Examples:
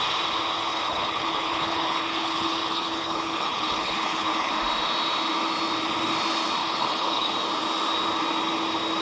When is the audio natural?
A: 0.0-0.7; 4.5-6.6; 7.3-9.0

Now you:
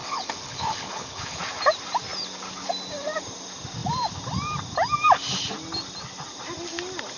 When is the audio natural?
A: 1.4-7.2

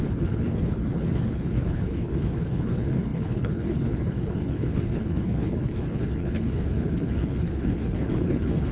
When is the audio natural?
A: none